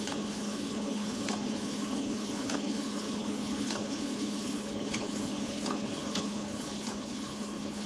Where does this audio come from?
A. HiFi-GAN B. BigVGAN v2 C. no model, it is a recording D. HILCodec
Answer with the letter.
D